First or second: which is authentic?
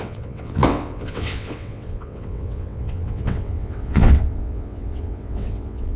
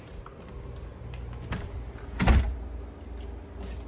second